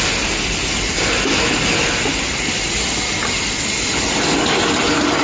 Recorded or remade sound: recorded